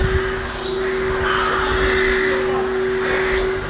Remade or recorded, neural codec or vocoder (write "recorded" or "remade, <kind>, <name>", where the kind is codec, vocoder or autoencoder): recorded